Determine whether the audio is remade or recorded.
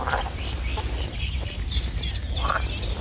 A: recorded